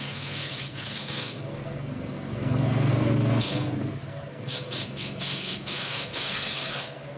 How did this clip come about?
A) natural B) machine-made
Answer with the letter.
B